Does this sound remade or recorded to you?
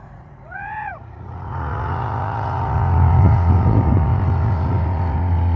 remade